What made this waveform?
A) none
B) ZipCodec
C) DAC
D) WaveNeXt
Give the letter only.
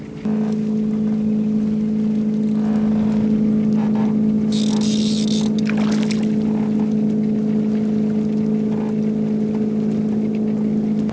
A